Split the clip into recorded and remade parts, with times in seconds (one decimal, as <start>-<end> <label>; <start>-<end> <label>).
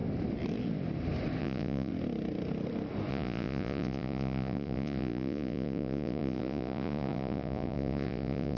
0.0-1.4 recorded; 1.4-1.9 remade; 1.9-3.1 recorded; 3.1-8.6 remade